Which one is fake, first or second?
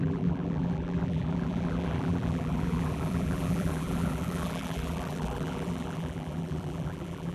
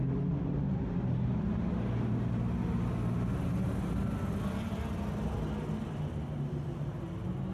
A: first